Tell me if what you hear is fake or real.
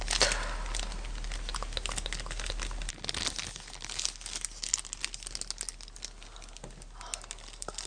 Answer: real